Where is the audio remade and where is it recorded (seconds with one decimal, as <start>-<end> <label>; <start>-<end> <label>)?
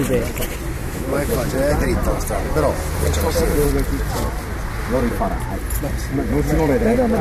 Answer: 0.0-0.8 recorded; 0.8-1.5 remade; 1.5-7.2 recorded